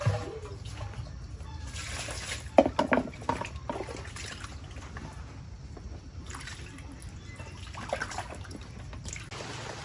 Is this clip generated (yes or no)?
no